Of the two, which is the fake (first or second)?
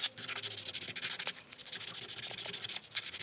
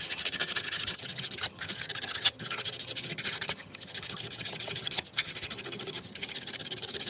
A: second